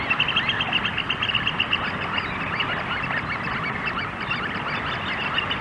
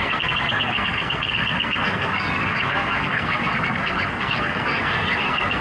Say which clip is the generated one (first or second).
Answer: second